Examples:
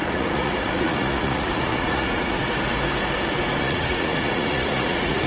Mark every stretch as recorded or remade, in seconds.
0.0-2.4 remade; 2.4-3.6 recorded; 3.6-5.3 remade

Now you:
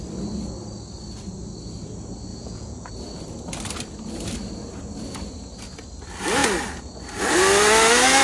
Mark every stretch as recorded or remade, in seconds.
0.0-2.3 recorded; 2.3-2.9 remade; 2.9-8.2 recorded

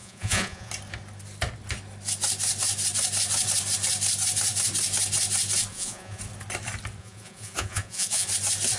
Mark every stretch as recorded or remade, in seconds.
0.0-0.7 remade; 0.7-5.7 recorded; 5.7-6.2 remade; 6.2-7.0 recorded; 7.0-8.3 remade; 8.3-8.8 recorded

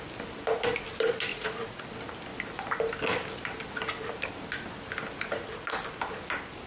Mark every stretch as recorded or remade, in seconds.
0.0-1.3 recorded; 1.3-1.8 remade; 1.8-6.7 recorded

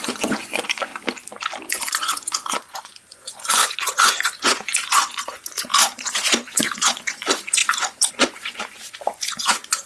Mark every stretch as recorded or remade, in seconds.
0.0-0.9 remade; 0.9-1.7 recorded; 1.7-9.9 remade

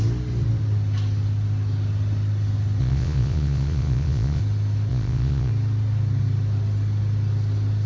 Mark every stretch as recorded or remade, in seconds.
0.0-2.8 recorded; 2.8-4.4 remade; 4.4-4.9 recorded; 4.9-5.5 remade; 5.5-7.9 recorded

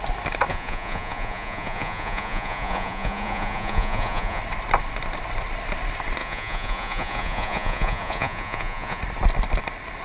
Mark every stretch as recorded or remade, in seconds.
0.0-0.5 recorded; 0.5-4.4 remade; 4.4-6.2 recorded; 6.2-9.0 remade; 9.0-10.0 recorded

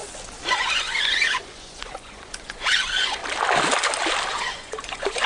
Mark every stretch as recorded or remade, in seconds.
0.0-0.5 recorded; 0.5-3.2 remade; 3.2-4.3 recorded; 4.3-5.3 remade